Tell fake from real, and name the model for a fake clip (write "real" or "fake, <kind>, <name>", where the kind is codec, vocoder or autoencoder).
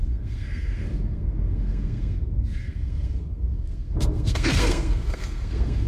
fake, codec, SNAC